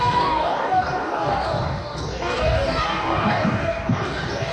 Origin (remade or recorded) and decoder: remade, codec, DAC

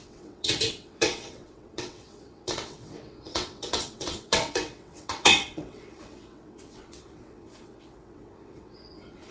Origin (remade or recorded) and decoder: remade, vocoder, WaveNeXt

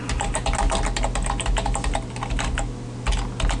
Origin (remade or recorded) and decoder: recorded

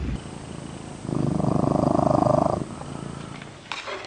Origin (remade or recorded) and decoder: recorded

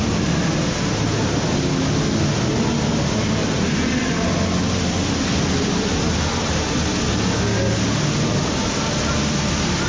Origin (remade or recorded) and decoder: recorded